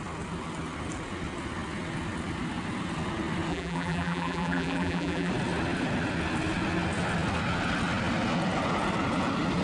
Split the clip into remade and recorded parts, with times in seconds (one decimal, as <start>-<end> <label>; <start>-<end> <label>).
0.0-3.5 recorded; 3.5-5.3 remade; 5.3-9.6 recorded